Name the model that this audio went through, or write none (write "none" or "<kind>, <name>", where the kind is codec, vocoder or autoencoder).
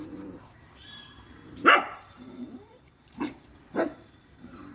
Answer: vocoder, BigVGAN v2